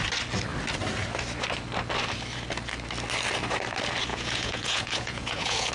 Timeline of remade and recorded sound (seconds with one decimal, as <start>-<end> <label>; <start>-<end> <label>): 0.0-4.1 recorded; 4.1-5.7 remade